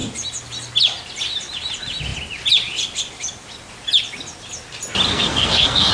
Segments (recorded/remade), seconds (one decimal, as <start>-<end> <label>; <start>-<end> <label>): 0.0-5.1 recorded; 5.1-5.9 remade